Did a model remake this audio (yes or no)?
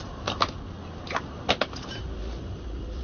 no